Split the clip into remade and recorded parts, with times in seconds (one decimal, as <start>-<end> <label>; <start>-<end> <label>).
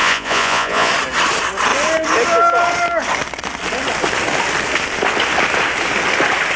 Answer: 0.0-0.9 remade; 0.9-6.6 recorded